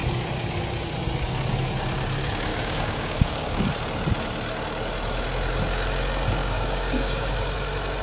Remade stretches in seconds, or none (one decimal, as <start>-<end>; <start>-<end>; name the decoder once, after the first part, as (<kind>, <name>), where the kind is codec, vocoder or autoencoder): 2.5-3.7 (codec, DAC); 6.4-7.5